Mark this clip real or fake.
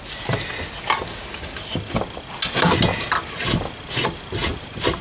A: real